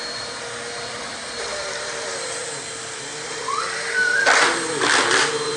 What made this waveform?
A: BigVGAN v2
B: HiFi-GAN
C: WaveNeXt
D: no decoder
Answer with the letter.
A